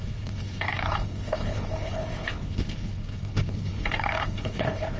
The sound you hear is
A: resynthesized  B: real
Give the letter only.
A